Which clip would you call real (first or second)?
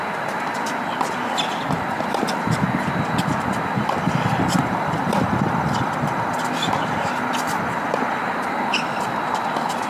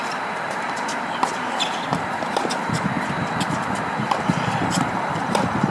first